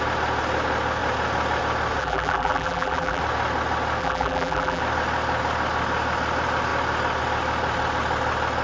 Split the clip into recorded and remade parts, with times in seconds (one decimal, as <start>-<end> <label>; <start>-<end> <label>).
0.0-2.0 recorded; 2.0-3.2 remade; 3.2-4.0 recorded; 4.0-4.8 remade; 4.8-8.6 recorded